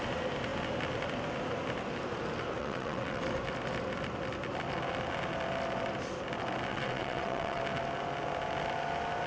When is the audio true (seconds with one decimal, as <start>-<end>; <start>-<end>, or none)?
0.0-2.6; 3.2-6.7; 7.6-9.3